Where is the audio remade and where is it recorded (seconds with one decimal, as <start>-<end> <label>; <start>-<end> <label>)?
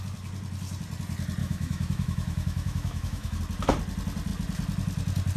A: 0.0-1.4 recorded; 1.4-3.4 remade; 3.4-5.4 recorded